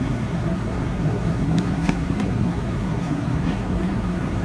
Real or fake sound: fake